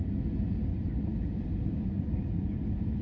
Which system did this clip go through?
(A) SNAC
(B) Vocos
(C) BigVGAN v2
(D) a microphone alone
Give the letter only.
D